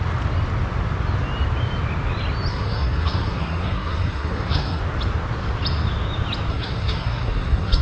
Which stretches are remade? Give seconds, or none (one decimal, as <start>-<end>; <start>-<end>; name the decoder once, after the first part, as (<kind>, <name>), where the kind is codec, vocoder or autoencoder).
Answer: 2.5-4.8 (codec, SNAC); 6.5-7.8